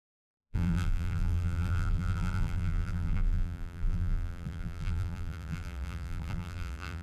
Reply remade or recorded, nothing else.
remade